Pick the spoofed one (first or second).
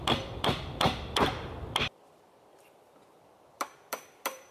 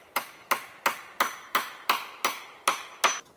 first